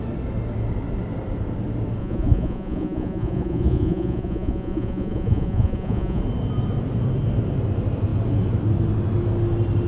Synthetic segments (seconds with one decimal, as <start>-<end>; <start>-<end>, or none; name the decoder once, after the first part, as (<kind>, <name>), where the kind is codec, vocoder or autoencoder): 2.0-6.2 (vocoder, Vocos)